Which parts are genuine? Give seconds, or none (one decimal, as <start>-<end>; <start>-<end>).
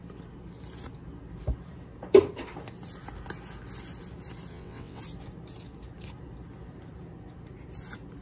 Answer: 0.0-4.5; 5.0-8.2